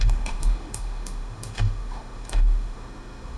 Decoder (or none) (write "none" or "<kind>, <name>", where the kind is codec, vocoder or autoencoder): autoencoder, DAC-VAE